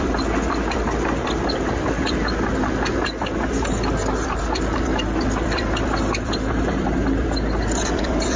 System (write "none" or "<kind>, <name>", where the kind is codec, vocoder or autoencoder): vocoder, BigVGAN v2